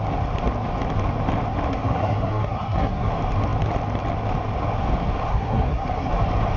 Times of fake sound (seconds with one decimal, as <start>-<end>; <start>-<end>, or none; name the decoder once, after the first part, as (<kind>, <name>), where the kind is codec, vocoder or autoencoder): 1.7-3.1 (codec, SNAC); 5.3-6.1